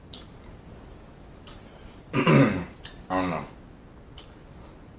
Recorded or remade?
recorded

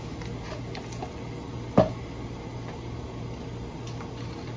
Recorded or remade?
recorded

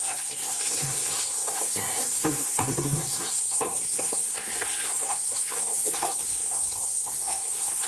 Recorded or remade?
remade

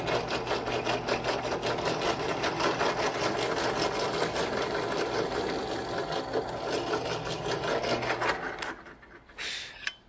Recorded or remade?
recorded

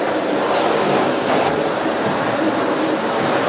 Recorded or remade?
recorded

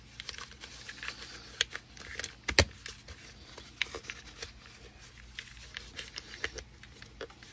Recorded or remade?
recorded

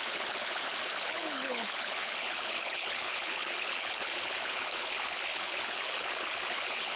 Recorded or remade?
remade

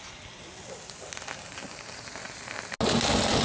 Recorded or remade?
recorded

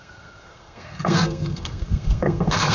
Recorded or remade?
remade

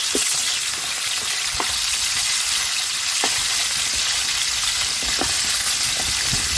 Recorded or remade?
recorded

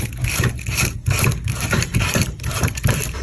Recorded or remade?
remade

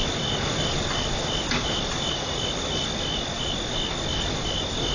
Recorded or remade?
recorded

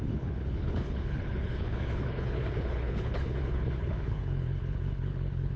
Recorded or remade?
remade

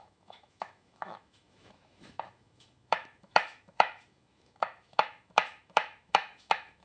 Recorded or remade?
remade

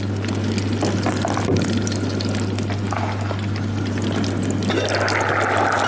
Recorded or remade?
recorded